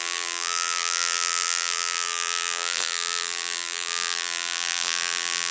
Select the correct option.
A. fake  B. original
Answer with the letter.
A